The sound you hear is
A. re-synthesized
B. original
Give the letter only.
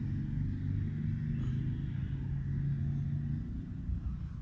B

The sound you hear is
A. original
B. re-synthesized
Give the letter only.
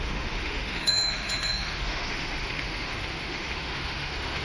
B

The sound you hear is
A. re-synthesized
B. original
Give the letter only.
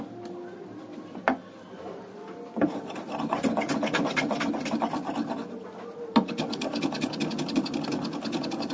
B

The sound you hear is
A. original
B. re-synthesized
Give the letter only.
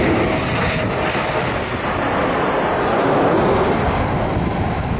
A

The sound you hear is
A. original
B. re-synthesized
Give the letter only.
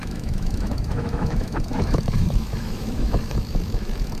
B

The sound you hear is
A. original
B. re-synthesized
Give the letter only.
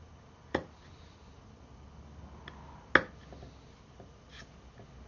A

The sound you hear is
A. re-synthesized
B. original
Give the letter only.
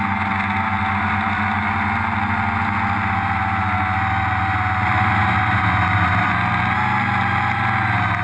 B